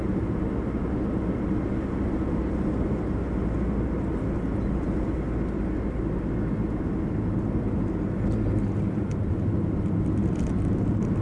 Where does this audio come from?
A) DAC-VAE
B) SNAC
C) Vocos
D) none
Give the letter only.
D